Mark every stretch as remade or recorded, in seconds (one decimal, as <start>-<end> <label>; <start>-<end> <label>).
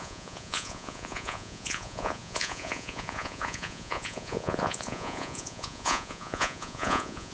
0.0-7.3 remade